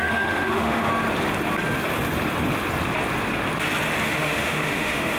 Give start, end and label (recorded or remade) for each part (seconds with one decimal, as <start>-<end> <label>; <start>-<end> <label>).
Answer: 0.0-0.9 remade; 0.9-4.0 recorded; 4.0-5.2 remade